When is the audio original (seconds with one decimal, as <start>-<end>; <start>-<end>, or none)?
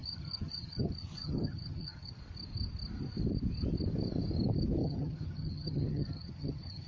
2.2-4.8